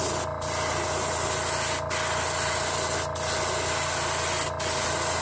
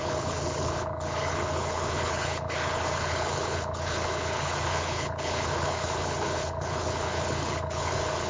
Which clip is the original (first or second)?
first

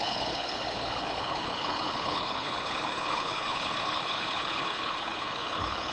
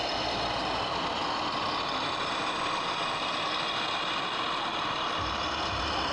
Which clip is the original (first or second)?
second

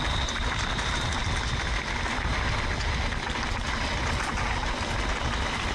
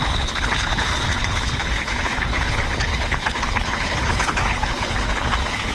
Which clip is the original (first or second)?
first